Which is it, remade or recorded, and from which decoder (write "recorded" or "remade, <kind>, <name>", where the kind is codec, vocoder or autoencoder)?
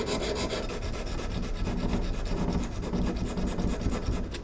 recorded